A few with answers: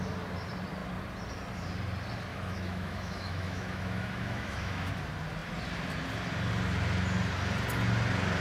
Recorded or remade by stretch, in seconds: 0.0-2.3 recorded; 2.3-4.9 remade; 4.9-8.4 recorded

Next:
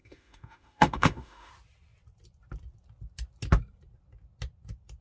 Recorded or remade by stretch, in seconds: 0.0-1.5 remade; 1.5-5.0 recorded

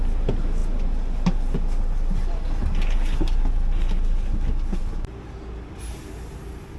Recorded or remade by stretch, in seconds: 0.0-6.8 recorded

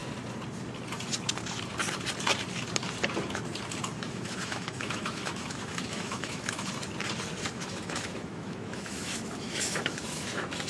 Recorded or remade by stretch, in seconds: 0.0-4.0 recorded; 4.0-6.7 remade; 6.7-7.5 recorded; 7.5-10.7 remade

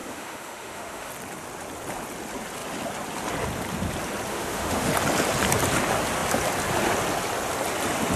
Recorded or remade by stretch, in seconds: 0.0-1.1 remade; 1.1-4.3 recorded; 4.3-4.9 remade; 4.9-8.2 recorded

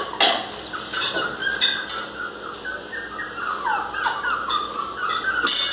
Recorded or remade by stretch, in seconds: 0.0-5.7 recorded